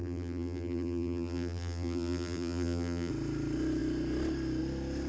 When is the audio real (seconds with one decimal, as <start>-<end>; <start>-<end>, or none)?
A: 3.1-5.1